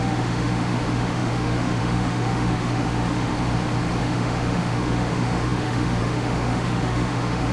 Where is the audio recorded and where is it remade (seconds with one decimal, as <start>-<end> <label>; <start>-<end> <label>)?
0.0-3.3 remade; 3.3-4.0 recorded; 4.0-7.5 remade